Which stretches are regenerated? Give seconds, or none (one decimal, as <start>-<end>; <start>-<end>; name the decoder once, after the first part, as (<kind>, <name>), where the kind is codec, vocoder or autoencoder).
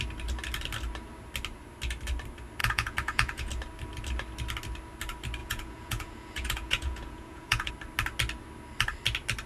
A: 2.6-3.5 (vocoder, Vocos); 5.4-7.7